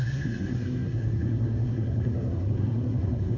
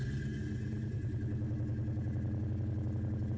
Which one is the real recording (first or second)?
second